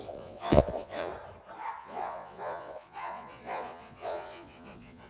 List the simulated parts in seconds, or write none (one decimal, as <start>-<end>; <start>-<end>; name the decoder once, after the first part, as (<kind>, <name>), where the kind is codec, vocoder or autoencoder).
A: 0.0-1.1 (vocoder, Vocos); 1.8-5.1